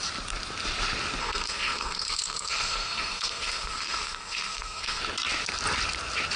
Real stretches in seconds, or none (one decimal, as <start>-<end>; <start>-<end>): 0.0-1.2; 5.0-6.4